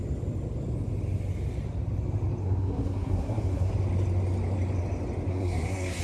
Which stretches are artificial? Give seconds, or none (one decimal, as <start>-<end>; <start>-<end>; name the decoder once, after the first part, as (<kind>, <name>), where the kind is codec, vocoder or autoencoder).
2.4-3.7 (codec, SNAC); 5.3-6.0